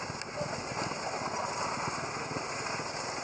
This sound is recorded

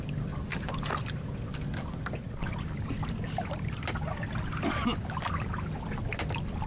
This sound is recorded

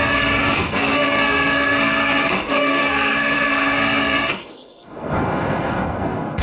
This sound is remade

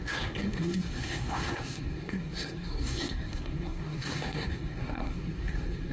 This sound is remade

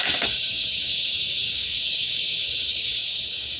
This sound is remade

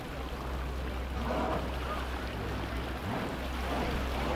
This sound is recorded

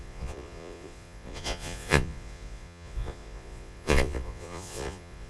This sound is remade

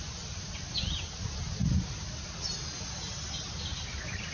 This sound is recorded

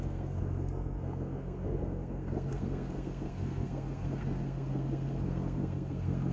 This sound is remade